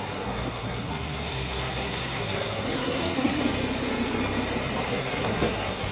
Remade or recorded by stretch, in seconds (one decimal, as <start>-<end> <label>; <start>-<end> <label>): 0.0-3.4 remade; 3.4-4.8 recorded; 4.8-5.9 remade